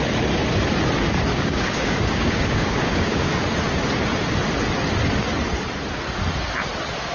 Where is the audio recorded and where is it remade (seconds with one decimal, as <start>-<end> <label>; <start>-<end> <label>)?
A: 0.0-1.3 recorded; 1.3-3.5 remade; 3.5-7.1 recorded